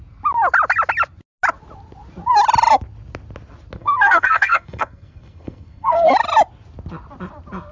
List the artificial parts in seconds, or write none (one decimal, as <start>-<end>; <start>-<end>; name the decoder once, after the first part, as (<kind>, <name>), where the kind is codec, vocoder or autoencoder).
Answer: 3.8-6.1 (codec, SNAC)